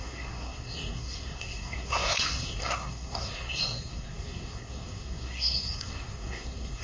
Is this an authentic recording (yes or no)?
no